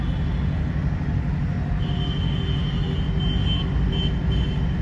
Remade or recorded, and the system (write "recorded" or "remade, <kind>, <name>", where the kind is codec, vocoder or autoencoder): recorded